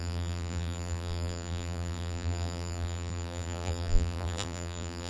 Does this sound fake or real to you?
fake